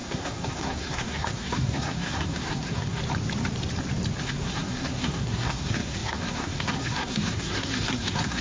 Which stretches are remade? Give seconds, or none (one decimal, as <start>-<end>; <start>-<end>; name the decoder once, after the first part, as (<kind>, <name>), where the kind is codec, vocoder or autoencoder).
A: 0.0-3.0 (codec, SNAC); 4.2-8.4